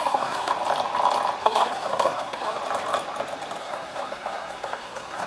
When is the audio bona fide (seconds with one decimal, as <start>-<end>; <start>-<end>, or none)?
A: 0.5-1.4; 2.6-3.6